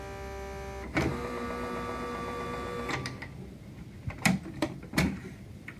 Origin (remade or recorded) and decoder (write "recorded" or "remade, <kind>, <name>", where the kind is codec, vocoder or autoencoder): recorded